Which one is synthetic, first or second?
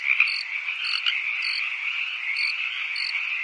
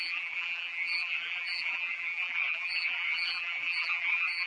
second